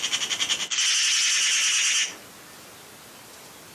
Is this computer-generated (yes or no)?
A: no